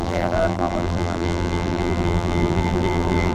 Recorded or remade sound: remade